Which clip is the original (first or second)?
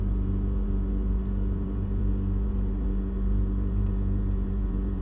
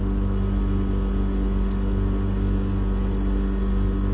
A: second